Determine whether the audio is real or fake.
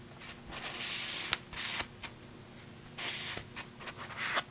real